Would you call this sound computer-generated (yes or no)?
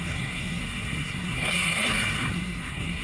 yes